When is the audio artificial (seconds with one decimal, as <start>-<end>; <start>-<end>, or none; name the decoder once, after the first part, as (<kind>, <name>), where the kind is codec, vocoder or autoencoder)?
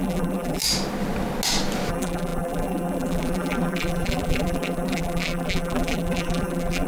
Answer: 0.0-0.6 (vocoder, BigVGAN v2); 1.9-6.9